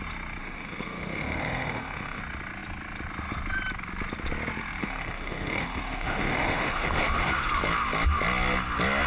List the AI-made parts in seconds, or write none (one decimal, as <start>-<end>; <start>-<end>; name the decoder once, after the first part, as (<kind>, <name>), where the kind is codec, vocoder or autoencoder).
0.4-2.2 (autoencoder, DAC-VAE); 4.8-7.3